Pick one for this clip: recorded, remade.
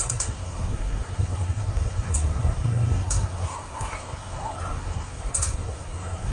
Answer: remade